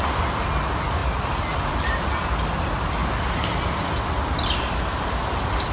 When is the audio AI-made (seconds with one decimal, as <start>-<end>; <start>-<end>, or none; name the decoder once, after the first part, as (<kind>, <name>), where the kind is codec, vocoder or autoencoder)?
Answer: none